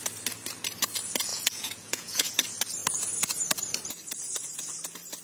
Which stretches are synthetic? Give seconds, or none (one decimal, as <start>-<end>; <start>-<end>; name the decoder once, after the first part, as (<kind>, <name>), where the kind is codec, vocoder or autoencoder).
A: 1.3-2.3 (vocoder, Vocos)